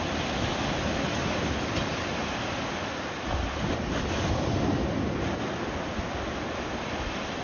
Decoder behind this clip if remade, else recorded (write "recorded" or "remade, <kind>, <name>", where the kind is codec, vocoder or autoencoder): recorded